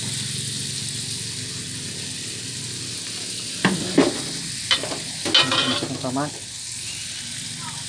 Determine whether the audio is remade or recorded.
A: recorded